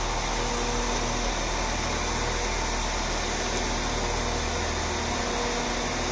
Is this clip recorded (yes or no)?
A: yes